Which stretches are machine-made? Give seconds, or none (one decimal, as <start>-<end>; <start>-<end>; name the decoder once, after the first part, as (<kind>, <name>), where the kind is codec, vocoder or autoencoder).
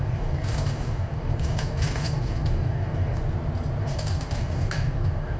0.0-3.2 (codec, DAC); 3.8-5.4